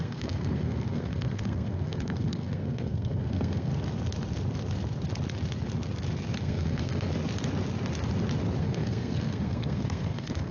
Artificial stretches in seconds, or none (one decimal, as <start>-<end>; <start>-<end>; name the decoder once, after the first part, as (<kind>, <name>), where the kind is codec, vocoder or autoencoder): 0.0-3.7 (codec, SNAC); 6.4-7.1; 8.6-10.5